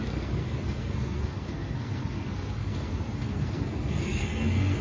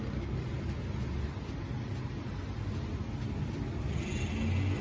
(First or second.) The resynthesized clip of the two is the first